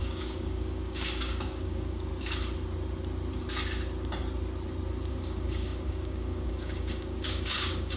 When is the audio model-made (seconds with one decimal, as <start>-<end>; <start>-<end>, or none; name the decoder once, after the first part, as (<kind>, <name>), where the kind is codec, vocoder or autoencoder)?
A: 0.0-2.1 (codec, DAC); 5.1-8.0

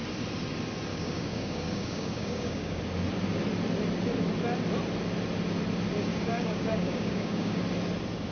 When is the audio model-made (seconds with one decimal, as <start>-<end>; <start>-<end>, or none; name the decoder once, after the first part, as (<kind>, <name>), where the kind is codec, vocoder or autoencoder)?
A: 0.9-2.8 (codec, DAC); 6.1-7.6

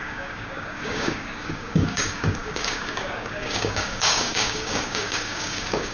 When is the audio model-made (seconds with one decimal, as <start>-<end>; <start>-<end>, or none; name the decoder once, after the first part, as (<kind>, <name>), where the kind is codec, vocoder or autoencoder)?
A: 0.0-5.9 (codec, DAC)

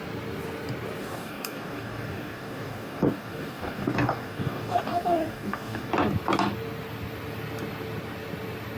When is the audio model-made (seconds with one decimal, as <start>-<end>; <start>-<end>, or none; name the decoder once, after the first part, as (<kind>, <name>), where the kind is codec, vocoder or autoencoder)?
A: 1.0-5.9 (codec, DAC)

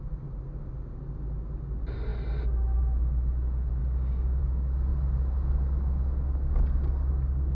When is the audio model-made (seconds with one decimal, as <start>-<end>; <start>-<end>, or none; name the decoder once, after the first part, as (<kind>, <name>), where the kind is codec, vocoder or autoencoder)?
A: 3.8-4.4 (codec, DAC)

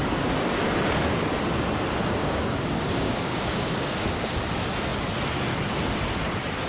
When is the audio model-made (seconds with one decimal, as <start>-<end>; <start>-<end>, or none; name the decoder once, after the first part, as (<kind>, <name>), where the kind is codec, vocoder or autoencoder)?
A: 2.2-4.2 (codec, DAC)